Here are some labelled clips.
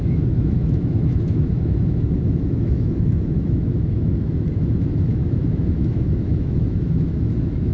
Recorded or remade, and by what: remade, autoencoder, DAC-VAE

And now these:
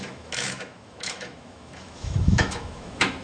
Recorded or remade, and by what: remade, autoencoder, DAC-VAE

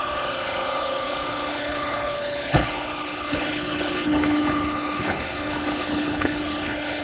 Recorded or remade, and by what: remade, codec, HILCodec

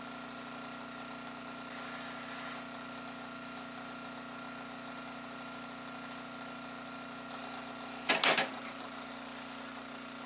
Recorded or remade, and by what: recorded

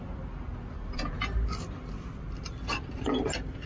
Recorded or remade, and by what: recorded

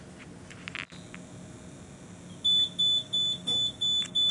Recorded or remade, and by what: recorded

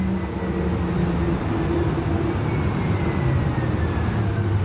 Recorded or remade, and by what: recorded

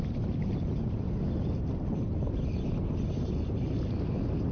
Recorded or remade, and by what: recorded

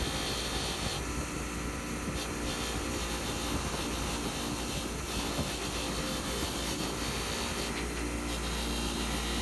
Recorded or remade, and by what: recorded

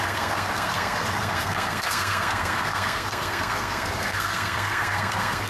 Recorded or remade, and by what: remade, codec, SNAC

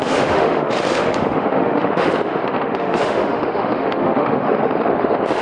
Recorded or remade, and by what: remade, autoencoder, DAC-VAE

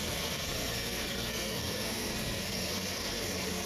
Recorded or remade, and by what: remade, codec, SNAC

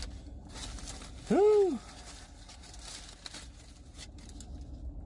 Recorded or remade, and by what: recorded